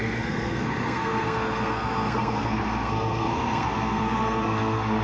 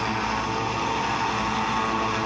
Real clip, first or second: second